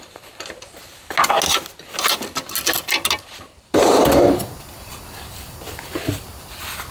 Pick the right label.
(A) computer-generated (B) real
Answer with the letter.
B